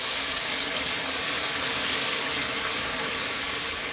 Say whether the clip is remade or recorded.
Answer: remade